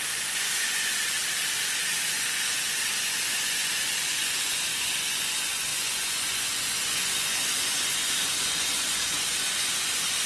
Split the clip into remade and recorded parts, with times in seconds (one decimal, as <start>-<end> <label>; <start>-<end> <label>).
0.0-1.2 remade; 1.2-1.7 recorded; 1.7-10.3 remade